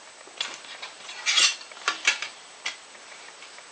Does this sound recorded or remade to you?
remade